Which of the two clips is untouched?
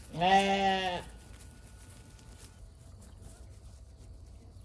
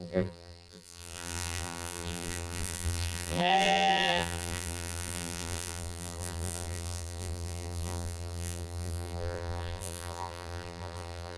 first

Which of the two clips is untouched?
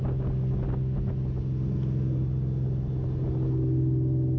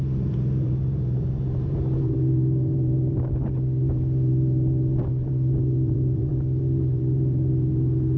first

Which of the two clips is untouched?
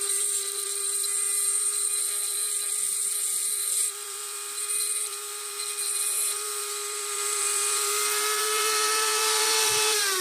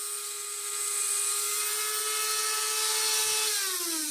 second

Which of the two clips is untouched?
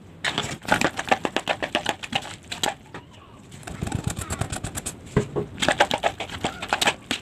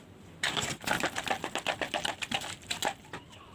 first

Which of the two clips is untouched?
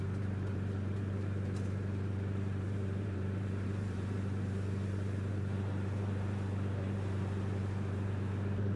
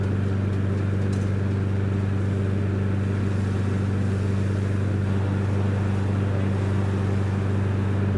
second